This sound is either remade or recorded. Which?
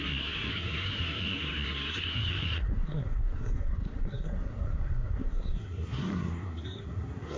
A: remade